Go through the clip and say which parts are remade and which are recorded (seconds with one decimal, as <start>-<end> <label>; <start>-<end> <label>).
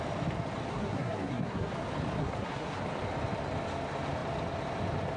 0.0-0.7 recorded; 0.7-1.7 remade; 1.7-2.2 recorded; 2.2-2.8 remade; 2.8-5.2 recorded